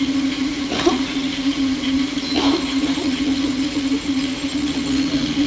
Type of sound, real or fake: fake